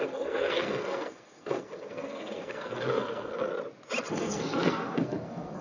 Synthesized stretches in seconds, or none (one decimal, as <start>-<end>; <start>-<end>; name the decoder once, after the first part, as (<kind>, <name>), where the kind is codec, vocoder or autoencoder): 0.0-3.5 (codec, SNAC); 4.1-5.6